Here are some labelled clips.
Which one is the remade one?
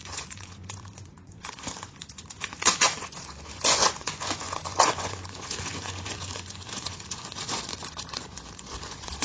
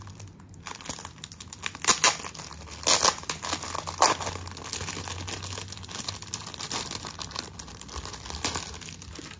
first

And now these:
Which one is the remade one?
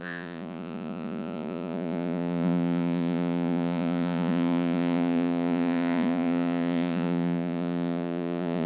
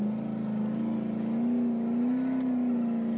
first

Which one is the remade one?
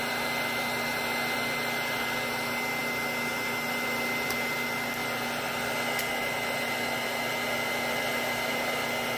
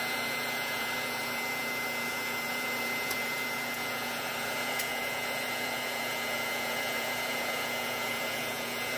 second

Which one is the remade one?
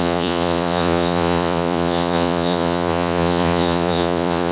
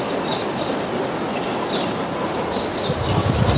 first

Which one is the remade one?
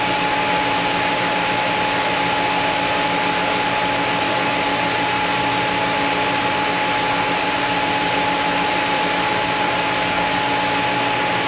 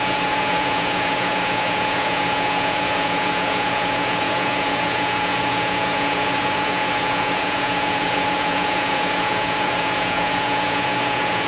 second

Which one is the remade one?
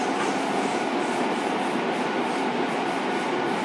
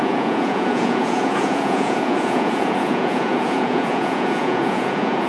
second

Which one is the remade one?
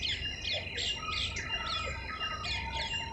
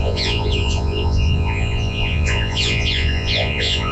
second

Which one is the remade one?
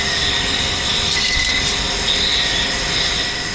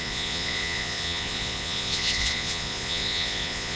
second